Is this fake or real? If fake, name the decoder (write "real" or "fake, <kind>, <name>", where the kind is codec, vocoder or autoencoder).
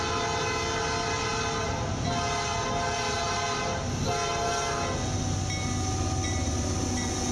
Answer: real